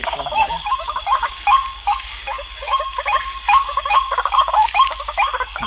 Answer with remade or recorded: remade